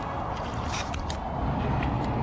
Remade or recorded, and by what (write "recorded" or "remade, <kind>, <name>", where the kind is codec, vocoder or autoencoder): recorded